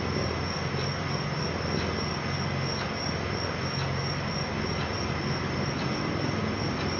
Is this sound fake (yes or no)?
no